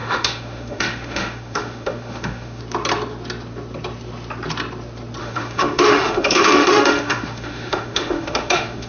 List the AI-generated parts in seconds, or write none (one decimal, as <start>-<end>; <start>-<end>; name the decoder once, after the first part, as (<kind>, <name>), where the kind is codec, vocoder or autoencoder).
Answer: 0.0-2.6 (autoencoder, DAC-VAE); 5.2-8.9